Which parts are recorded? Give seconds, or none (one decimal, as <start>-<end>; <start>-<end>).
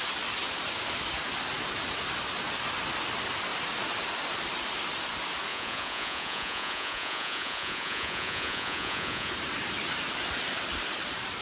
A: 0.0-5.5; 9.3-11.4